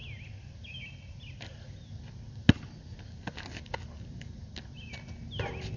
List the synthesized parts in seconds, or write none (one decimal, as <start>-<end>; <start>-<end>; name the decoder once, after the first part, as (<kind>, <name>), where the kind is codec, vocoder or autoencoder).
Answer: none